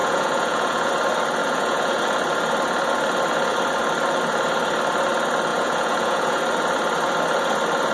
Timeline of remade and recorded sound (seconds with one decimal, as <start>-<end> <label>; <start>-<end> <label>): 0.0-0.9 remade; 0.9-1.4 recorded; 1.4-2.0 remade; 2.0-5.5 recorded; 5.5-6.4 remade; 6.4-7.9 recorded